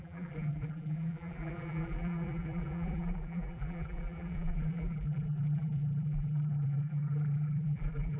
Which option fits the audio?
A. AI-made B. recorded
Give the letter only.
A